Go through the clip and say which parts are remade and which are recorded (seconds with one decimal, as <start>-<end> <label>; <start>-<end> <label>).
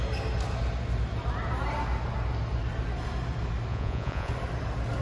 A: 0.0-3.7 recorded; 3.7-4.3 remade; 4.3-5.0 recorded